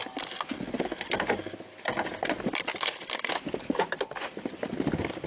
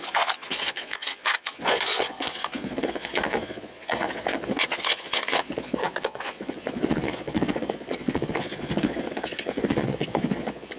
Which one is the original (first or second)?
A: first